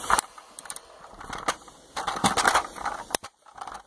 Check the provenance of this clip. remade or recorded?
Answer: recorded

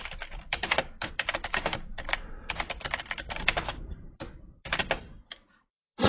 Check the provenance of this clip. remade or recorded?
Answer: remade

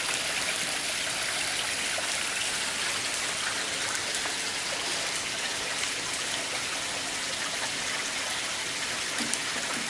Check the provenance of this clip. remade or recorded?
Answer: recorded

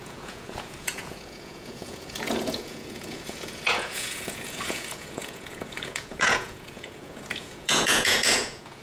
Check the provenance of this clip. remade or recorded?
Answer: remade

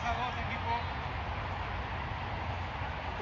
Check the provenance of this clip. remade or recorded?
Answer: recorded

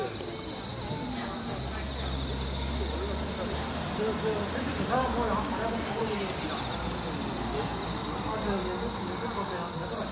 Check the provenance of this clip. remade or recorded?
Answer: recorded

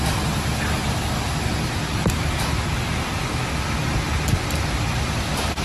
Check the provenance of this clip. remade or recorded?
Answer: recorded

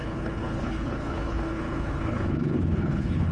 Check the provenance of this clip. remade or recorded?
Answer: remade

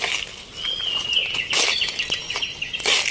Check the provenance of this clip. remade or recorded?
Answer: recorded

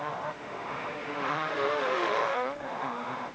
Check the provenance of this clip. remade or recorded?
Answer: remade